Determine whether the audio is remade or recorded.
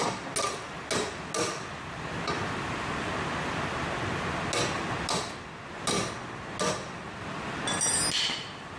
recorded